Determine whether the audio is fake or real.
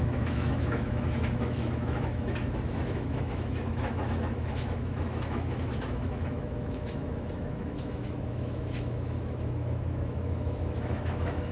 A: fake